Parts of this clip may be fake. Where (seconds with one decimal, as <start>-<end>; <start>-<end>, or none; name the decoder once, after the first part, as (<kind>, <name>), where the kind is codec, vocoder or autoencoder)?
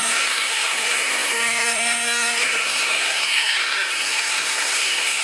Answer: 0.0-5.2 (codec, SNAC)